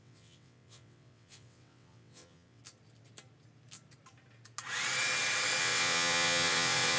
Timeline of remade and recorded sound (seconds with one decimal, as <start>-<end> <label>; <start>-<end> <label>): 0.0-2.6 remade; 2.6-5.6 recorded; 5.6-7.0 remade